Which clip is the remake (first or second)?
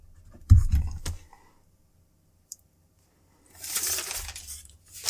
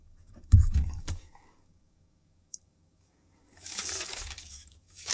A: second